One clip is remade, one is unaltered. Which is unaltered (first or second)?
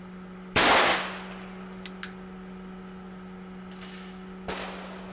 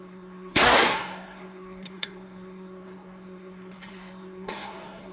first